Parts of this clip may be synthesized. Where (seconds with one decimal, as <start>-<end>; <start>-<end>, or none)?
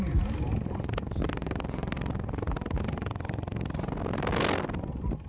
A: none